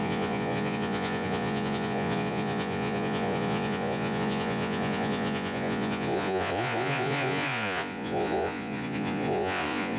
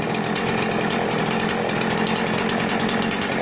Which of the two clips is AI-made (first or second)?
first